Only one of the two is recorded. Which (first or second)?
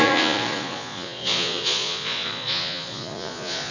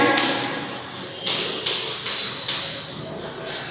second